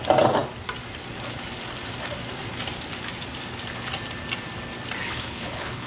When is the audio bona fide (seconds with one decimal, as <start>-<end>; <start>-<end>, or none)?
0.0-5.0